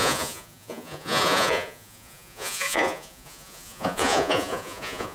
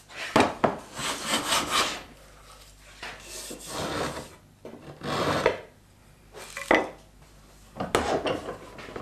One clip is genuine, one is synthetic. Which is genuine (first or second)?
second